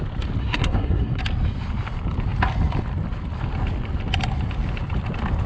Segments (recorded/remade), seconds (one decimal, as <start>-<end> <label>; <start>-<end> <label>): 0.0-0.4 recorded; 0.4-1.2 remade; 1.2-5.5 recorded